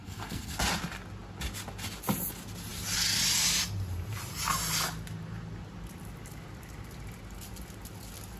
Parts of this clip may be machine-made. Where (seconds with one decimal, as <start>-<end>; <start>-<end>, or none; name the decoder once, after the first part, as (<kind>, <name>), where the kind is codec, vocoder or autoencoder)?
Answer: 0.0-0.6 (codec, SNAC)